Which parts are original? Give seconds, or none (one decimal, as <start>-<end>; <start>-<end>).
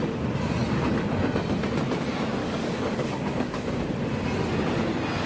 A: 0.0-2.4; 3.8-5.3